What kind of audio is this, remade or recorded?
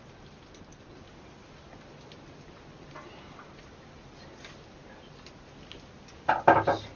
recorded